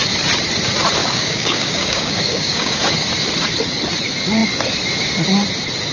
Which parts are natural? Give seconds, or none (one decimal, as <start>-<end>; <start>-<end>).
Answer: 0.0-1.0; 2.8-5.9